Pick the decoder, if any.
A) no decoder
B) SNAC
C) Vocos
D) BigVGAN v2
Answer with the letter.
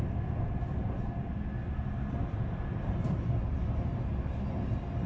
A